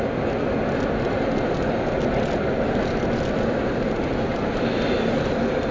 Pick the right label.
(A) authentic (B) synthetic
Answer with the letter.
A